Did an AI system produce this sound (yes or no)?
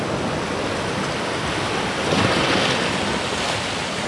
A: no